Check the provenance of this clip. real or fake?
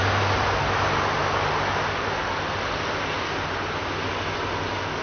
real